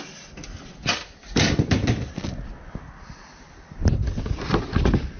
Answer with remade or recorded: recorded